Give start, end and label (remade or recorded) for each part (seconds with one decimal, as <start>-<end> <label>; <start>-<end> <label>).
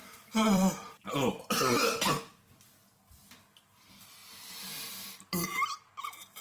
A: 0.0-2.1 remade; 2.1-4.2 recorded; 4.2-5.9 remade; 5.9-6.4 recorded